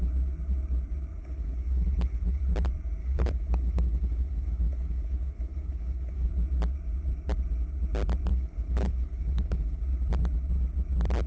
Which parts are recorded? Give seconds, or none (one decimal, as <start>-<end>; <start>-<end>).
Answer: 0.0-1.2; 2.4-3.0; 6.3-8.3; 9.8-11.3

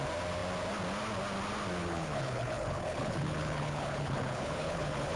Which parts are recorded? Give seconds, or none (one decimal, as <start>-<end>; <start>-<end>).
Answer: 0.0-1.8

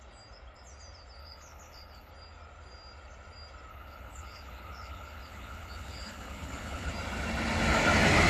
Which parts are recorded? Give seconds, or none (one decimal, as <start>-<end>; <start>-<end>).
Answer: 0.0-1.2; 2.1-3.7; 6.9-8.3

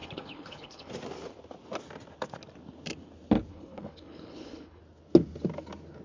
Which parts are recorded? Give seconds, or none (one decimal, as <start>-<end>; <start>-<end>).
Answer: 0.9-3.5; 4.8-6.0